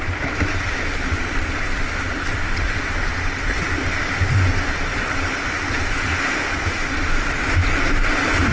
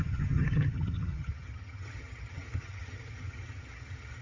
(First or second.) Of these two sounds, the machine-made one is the second